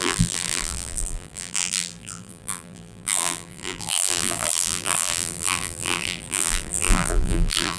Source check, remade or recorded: remade